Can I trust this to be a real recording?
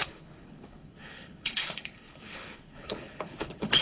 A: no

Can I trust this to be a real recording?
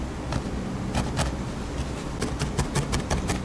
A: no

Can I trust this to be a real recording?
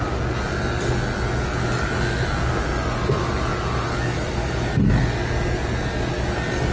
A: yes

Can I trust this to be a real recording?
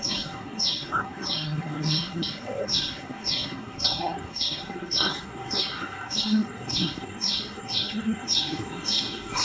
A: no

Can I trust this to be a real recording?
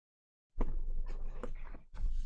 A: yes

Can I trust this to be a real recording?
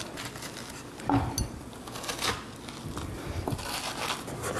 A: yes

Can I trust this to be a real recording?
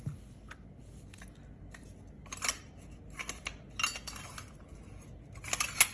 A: yes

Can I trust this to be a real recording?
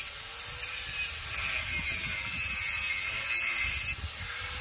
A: yes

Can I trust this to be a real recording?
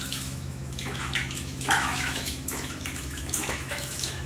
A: no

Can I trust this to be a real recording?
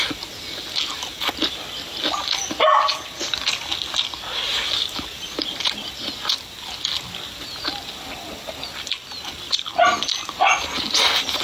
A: yes